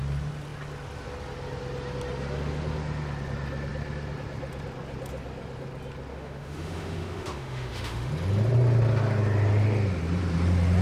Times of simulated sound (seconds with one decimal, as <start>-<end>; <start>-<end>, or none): 6.1-8.1